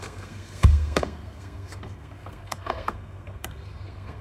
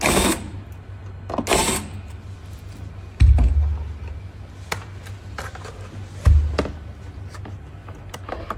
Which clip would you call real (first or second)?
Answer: second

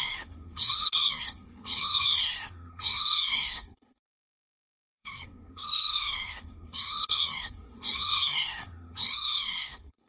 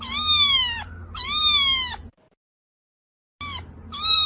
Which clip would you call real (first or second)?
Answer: second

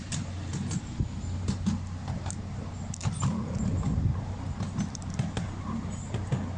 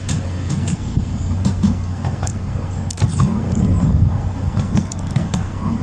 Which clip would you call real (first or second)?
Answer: first